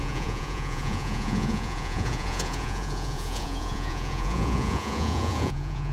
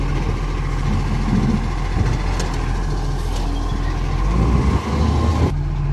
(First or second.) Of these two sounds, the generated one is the first